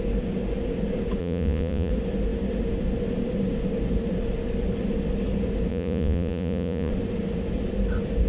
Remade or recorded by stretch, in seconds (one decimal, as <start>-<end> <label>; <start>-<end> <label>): 0.0-1.2 recorded; 1.2-1.9 remade; 1.9-5.7 recorded; 5.7-6.9 remade; 6.9-8.3 recorded